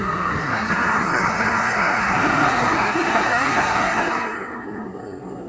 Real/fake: fake